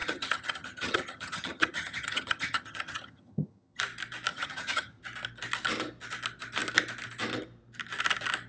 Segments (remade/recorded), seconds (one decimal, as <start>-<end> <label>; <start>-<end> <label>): 0.0-3.8 remade; 3.8-4.3 recorded; 4.3-5.0 remade; 5.0-8.5 recorded

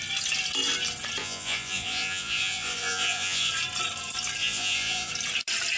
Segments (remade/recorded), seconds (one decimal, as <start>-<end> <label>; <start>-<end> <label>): 0.0-1.2 recorded; 1.2-3.5 remade; 3.5-4.4 recorded; 4.4-5.1 remade; 5.1-5.8 recorded